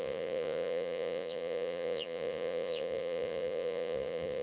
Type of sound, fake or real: fake